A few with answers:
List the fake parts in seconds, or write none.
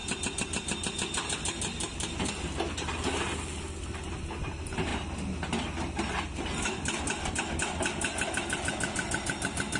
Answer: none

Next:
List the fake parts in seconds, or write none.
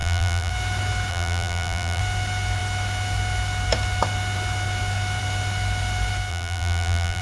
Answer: 0.0-0.5; 1.1-2.0; 6.3-7.2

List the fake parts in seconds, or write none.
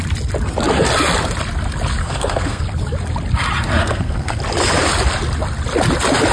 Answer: 2.0-2.6; 3.8-4.4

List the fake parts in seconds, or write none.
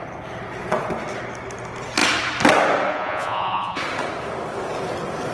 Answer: 2.9-3.8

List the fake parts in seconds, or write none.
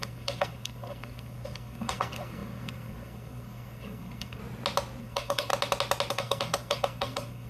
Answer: 0.0-4.4; 5.0-5.5; 6.1-7.5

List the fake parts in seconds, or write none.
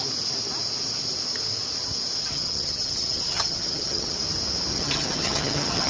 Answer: 2.2-4.2; 4.7-5.9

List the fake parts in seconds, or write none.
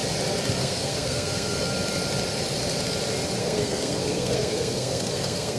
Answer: 0.6-1.7; 3.4-5.6